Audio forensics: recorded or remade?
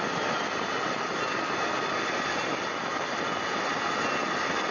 recorded